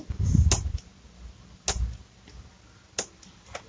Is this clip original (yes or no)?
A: yes